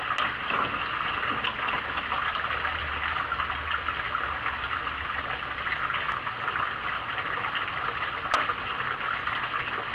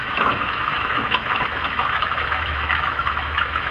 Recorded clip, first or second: first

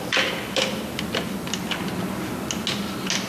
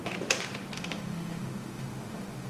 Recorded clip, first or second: first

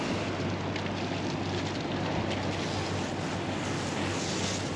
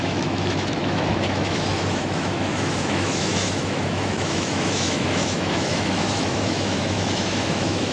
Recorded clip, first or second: first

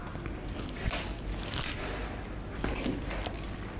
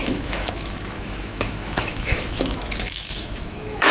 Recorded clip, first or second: first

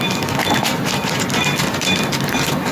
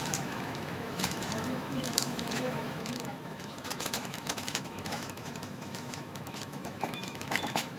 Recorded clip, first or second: first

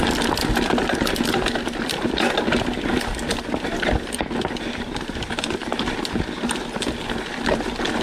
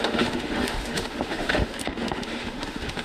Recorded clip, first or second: first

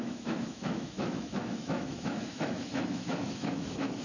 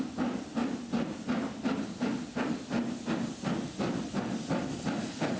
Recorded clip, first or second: second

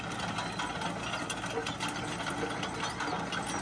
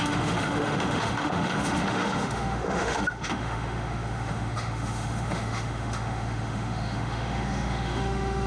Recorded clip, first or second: first